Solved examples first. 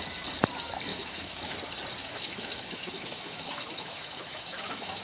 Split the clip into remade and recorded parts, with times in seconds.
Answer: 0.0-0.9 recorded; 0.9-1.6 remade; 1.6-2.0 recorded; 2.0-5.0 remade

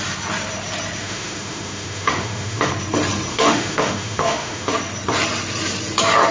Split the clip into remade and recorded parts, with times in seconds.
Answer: 0.0-1.0 recorded; 1.0-2.7 remade; 2.7-3.3 recorded; 3.3-4.7 remade; 4.7-6.3 recorded

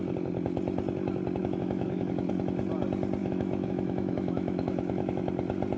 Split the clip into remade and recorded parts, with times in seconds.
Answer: 0.0-1.4 recorded; 1.4-2.3 remade; 2.3-3.2 recorded; 3.2-5.3 remade; 5.3-5.8 recorded

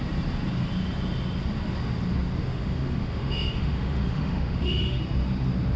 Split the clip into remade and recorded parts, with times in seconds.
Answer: 0.0-2.4 recorded; 2.4-5.0 remade; 5.0-5.8 recorded

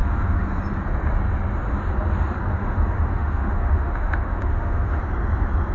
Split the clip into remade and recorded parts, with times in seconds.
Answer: 0.0-0.6 remade; 0.6-2.5 recorded; 2.5-5.0 remade; 5.0-5.7 recorded

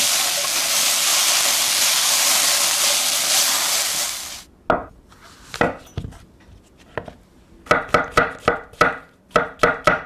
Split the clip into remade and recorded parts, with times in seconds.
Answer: 0.0-10.1 recorded

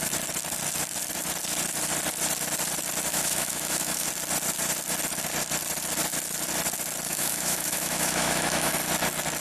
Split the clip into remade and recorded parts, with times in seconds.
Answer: 0.0-3.1 recorded; 3.1-4.1 remade; 4.1-7.1 recorded; 7.1-8.7 remade; 8.7-9.4 recorded

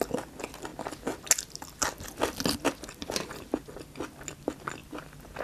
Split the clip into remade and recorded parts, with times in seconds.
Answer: 0.0-5.4 recorded